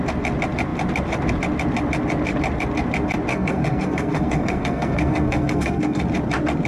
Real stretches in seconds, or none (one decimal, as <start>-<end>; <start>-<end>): 0.0-3.3; 6.0-6.7